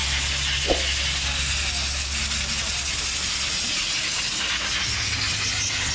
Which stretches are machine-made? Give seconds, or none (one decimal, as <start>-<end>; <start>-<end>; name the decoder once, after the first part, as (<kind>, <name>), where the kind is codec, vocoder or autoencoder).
none